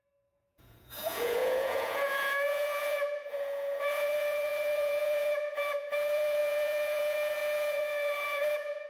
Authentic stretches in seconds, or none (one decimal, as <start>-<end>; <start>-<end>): none